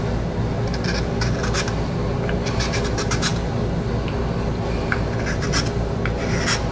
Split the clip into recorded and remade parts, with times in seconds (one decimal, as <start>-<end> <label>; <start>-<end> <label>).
0.0-6.7 recorded